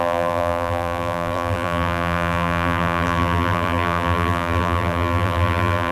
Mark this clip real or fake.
fake